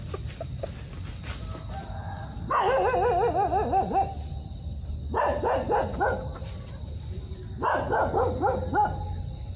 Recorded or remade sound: recorded